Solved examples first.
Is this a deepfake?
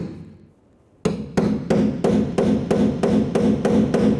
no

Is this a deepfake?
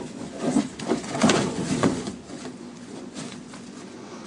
yes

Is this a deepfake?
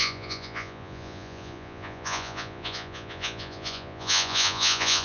yes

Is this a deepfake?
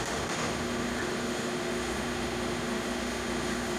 yes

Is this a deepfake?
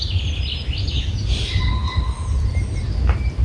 no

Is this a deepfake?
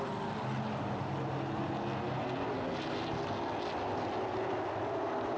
no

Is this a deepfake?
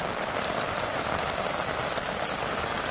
no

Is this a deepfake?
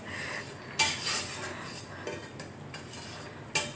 no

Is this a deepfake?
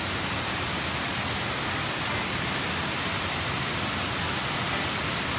no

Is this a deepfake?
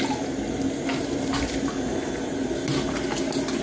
no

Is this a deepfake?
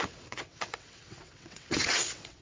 yes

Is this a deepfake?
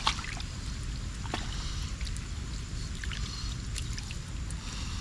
no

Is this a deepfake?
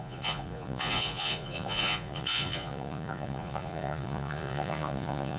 yes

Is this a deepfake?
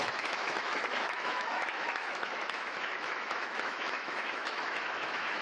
yes